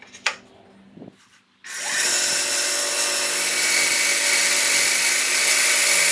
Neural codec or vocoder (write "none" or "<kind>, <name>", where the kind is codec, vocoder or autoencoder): none